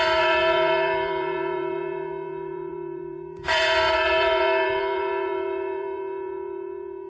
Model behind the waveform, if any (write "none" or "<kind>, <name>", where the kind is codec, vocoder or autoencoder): vocoder, BigVGAN v2